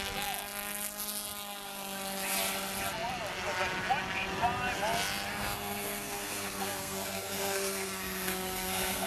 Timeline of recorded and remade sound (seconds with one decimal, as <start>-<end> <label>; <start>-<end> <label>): 0.0-5.3 recorded; 5.3-9.1 remade